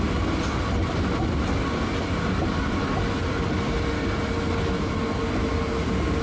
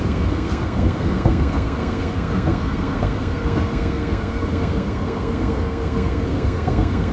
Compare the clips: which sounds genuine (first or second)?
first